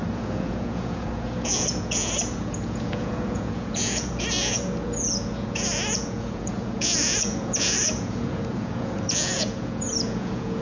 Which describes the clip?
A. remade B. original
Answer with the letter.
A